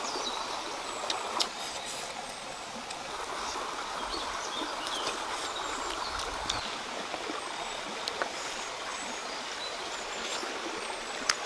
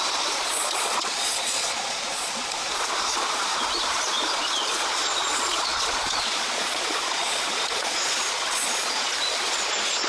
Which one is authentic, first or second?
first